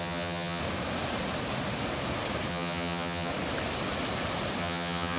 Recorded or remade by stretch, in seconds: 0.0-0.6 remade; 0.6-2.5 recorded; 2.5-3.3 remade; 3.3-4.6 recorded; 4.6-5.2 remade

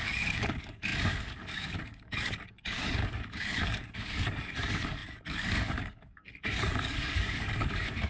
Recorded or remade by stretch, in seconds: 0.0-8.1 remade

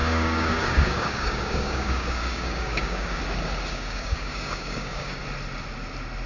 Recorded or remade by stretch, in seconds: 0.0-3.2 remade; 3.2-3.7 recorded; 3.7-5.2 remade; 5.2-6.3 recorded

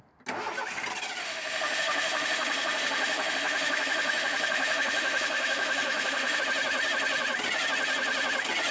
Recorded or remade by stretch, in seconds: 0.0-1.2 recorded; 1.2-6.4 remade; 6.4-8.7 recorded

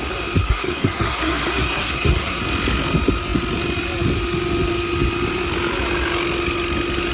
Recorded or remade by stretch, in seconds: 0.0-0.4 recorded; 0.4-2.4 remade; 2.4-7.1 recorded

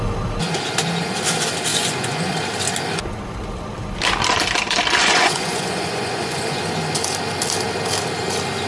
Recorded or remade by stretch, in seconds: 0.0-1.7 recorded; 1.7-2.3 remade; 2.3-5.0 recorded; 5.0-6.6 remade; 6.6-8.7 recorded